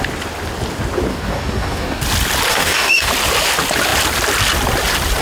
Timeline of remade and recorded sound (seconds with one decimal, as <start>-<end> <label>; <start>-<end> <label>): 0.0-1.1 recorded; 1.1-2.0 remade; 2.0-2.5 recorded; 2.5-3.1 remade; 3.1-5.2 recorded